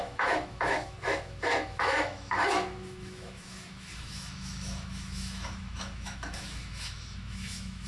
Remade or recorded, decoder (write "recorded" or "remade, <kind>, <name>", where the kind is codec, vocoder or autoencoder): remade, autoencoder, DAC-VAE